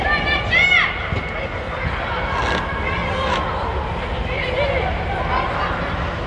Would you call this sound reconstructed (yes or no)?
no